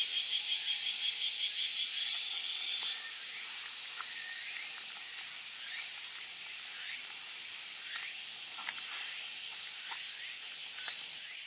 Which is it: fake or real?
real